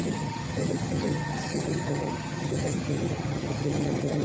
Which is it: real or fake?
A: fake